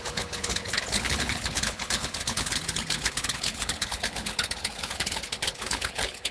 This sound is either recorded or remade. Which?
remade